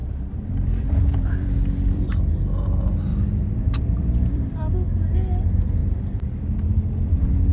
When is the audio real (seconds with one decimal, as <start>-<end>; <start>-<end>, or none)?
2.1-3.1; 4.7-5.8; 6.4-7.5